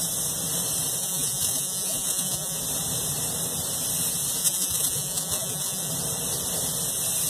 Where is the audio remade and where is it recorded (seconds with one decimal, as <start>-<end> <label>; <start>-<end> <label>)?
0.0-1.0 recorded; 1.0-2.6 remade; 2.6-4.4 recorded; 4.4-5.9 remade; 5.9-7.3 recorded